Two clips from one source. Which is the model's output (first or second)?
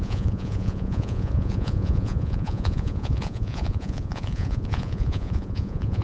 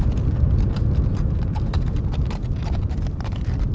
first